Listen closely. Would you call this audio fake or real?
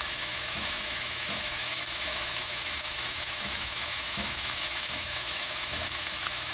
fake